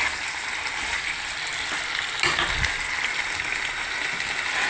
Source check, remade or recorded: recorded